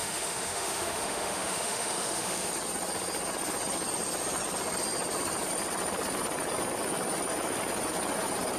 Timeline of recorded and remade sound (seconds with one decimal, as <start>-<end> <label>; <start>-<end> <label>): 0.0-2.5 remade; 2.5-8.6 recorded